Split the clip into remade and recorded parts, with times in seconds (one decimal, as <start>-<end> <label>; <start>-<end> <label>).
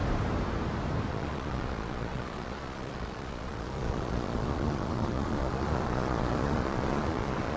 0.0-1.1 recorded; 1.1-7.6 remade